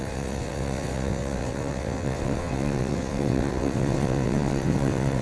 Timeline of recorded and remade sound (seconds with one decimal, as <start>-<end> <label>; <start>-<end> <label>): 0.0-5.2 remade